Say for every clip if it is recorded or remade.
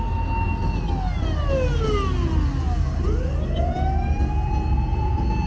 recorded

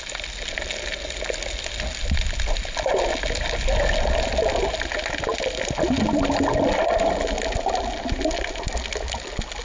recorded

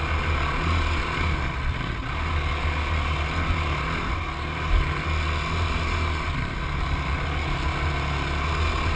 recorded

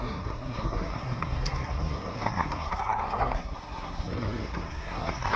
remade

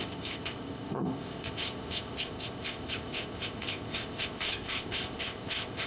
remade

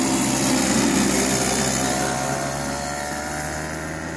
recorded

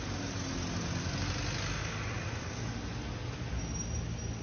recorded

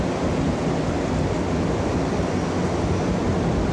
recorded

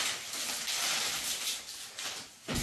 recorded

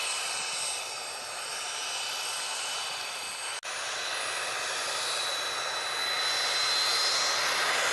recorded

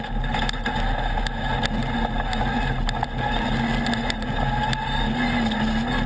recorded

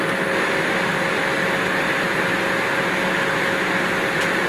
recorded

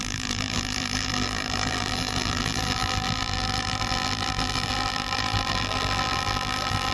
remade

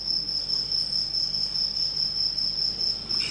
recorded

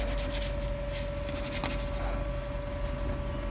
recorded